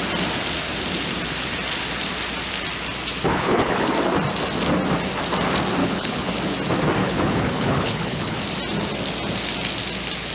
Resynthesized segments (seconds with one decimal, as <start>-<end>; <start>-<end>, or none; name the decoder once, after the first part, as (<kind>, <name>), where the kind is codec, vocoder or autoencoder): 3.3-3.9 (codec, HILCodec); 5.8-6.3; 7.0-8.4